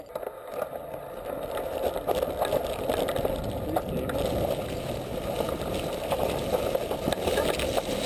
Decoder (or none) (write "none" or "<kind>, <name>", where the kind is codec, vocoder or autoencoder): none